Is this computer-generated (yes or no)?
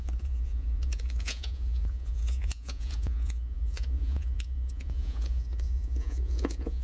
yes